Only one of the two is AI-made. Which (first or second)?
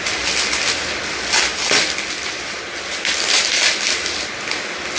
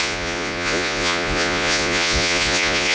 second